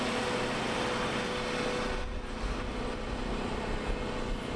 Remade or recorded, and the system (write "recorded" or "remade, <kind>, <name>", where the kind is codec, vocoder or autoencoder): recorded